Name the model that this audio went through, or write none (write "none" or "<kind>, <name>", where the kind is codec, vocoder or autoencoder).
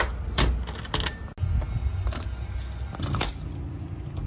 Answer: none